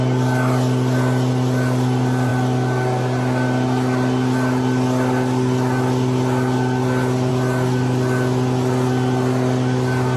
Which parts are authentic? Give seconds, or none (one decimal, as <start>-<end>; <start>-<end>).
0.0-10.2

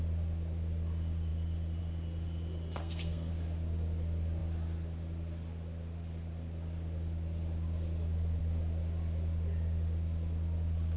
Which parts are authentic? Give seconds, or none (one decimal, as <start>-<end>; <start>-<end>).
0.0-2.8; 3.3-11.0

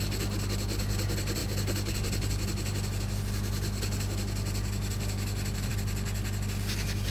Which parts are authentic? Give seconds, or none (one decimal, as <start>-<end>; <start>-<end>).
0.0-7.1

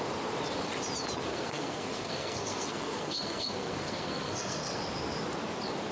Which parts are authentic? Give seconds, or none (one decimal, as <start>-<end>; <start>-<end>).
0.0-1.3; 4.8-5.9

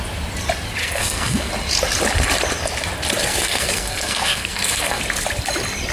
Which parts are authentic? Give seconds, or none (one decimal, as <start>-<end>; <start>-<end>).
0.0-0.8; 1.5-3.2; 5.0-5.9

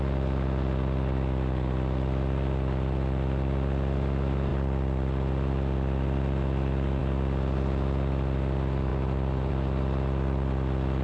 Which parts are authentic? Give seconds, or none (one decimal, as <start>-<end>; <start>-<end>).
0.0-11.0